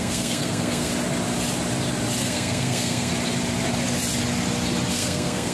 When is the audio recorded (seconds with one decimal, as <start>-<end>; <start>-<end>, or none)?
0.9-2.2; 3.1-4.9